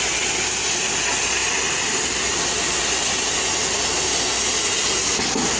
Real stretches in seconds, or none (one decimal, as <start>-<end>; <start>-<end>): 0.0-5.6